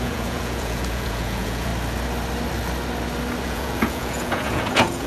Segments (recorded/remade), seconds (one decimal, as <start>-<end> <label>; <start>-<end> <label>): 0.0-1.7 remade; 1.7-3.4 recorded; 3.4-5.1 remade